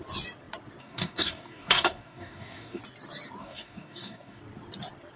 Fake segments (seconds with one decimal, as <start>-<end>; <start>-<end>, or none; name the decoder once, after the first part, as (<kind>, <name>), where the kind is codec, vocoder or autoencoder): 0.8-2.8 (codec, DAC); 3.4-4.4